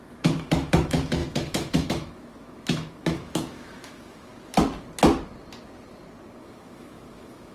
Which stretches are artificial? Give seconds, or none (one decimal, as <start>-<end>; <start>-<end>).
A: 0.0-4.3; 6.4-7.5